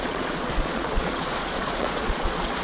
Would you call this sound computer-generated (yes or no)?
yes